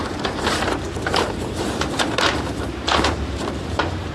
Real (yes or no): no